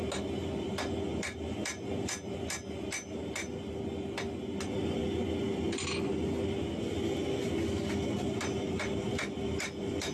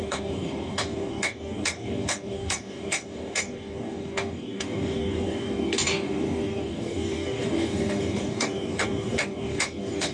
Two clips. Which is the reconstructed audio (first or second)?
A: second